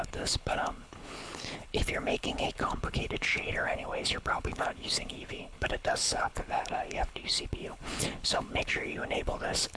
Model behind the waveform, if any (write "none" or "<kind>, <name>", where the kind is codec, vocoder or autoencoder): codec, HILCodec